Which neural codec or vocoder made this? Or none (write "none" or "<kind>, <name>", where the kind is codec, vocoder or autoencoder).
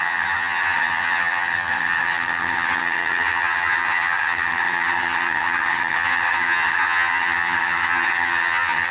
vocoder, HiFi-GAN